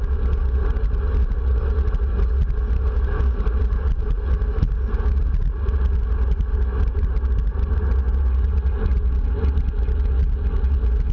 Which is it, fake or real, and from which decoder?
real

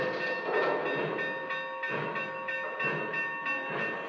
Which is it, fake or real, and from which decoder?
real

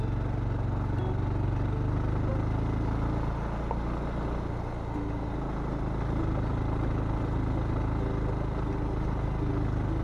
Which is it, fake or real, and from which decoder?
real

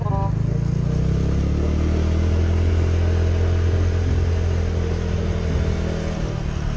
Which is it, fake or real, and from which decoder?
real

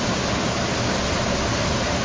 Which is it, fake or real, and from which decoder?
real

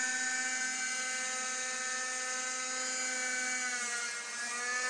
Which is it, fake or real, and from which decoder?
real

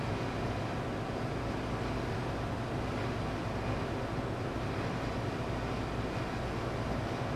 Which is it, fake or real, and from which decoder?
real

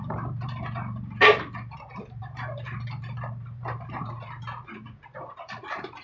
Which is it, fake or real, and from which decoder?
fake, vocoder, BigVGAN v2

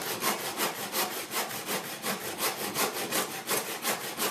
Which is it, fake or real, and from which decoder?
real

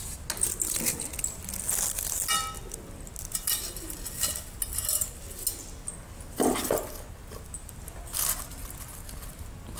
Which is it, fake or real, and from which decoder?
real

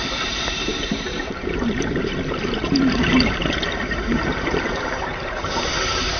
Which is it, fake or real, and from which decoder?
fake, vocoder, BigVGAN v2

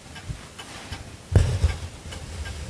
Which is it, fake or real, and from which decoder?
real